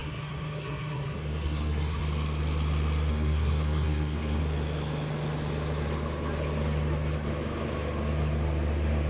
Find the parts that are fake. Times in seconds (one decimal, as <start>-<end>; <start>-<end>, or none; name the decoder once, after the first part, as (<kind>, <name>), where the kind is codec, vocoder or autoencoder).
0.0-2.0 (codec, SNAC); 3.1-4.4